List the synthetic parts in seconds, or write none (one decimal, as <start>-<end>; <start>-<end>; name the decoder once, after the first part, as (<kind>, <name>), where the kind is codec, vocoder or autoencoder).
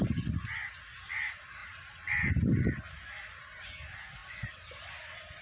1.6-3.1 (vocoder, BigVGAN v2); 4.2-4.7